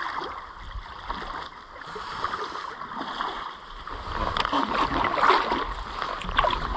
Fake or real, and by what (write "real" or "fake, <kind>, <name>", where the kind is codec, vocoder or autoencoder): real